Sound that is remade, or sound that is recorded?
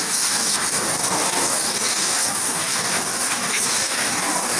remade